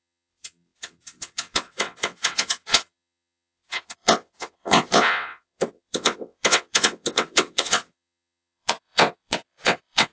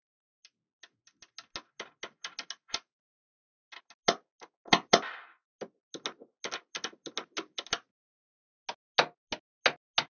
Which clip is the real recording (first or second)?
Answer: second